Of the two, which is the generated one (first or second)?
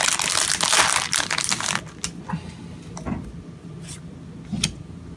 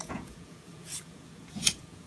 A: second